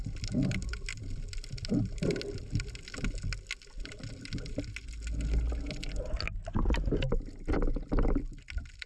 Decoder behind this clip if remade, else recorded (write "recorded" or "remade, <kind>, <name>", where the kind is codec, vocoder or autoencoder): recorded